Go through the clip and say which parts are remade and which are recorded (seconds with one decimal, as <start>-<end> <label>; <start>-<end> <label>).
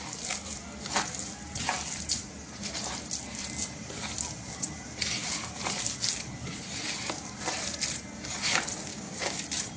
0.0-8.9 recorded; 8.9-9.4 remade; 9.4-9.8 recorded